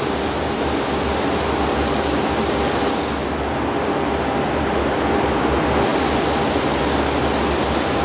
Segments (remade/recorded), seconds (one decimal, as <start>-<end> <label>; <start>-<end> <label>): 0.0-8.0 recorded